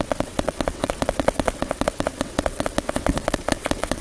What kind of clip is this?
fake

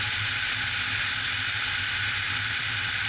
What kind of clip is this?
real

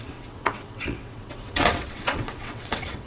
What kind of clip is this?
fake